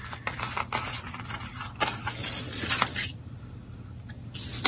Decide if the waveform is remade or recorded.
recorded